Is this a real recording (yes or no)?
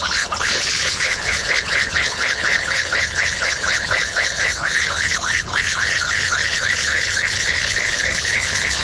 no